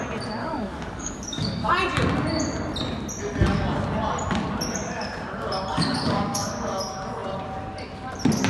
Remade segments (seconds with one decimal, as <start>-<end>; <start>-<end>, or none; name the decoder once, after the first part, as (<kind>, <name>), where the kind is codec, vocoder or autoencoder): 0.4-1.7 (codec, DAC); 5.7-6.8